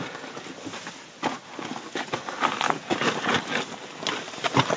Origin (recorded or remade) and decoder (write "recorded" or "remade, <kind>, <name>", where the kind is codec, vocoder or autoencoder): recorded